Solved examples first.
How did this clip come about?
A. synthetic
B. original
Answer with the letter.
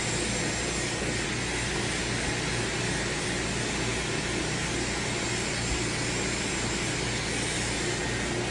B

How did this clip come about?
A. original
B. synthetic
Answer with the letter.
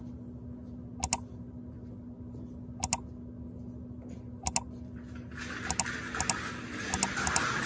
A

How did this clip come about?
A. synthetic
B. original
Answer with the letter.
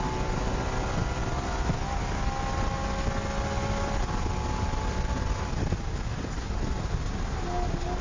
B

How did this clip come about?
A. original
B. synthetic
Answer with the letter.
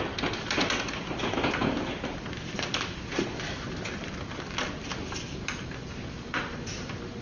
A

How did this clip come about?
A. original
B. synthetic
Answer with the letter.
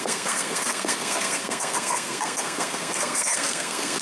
B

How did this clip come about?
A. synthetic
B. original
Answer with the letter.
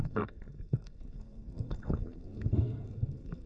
A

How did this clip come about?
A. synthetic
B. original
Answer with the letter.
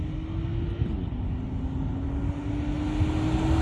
B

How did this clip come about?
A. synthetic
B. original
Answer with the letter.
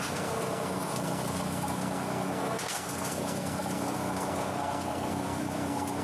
A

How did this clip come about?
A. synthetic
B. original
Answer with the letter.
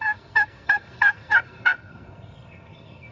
A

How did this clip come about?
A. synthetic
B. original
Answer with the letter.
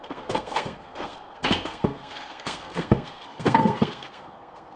A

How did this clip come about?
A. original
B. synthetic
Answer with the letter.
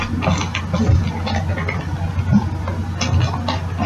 A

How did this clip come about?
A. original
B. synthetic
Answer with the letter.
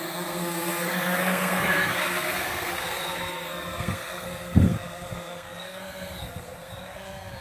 B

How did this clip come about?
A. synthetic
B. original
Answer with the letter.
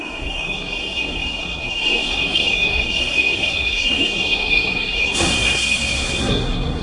A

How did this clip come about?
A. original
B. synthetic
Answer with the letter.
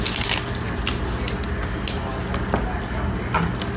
A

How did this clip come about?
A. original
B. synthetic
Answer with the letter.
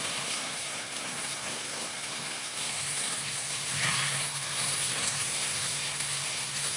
B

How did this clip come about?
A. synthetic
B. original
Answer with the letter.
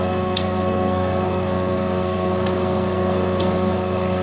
A